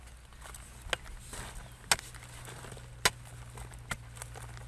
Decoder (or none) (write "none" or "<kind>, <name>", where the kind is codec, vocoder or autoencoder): none